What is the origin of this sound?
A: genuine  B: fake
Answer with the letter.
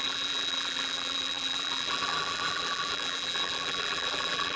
B